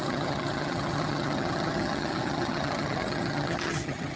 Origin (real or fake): fake